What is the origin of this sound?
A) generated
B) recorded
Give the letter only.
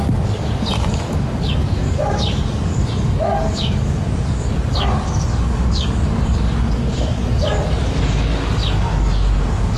A